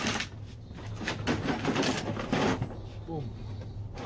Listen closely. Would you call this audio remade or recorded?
recorded